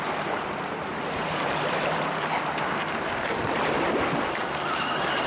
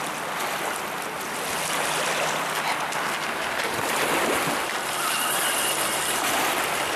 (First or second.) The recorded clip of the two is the second